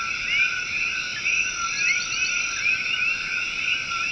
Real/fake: real